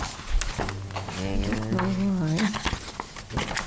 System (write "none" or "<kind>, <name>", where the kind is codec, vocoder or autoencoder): none